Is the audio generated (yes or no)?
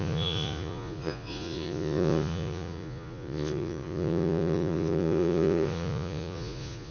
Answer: yes